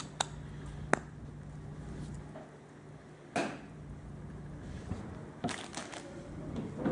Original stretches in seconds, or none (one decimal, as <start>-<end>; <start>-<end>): 0.0-6.9